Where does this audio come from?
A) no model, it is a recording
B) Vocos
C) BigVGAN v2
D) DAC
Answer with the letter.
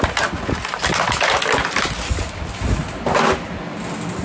A